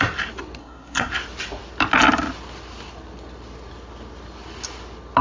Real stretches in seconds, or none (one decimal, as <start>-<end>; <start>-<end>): 0.0-0.6; 1.1-5.2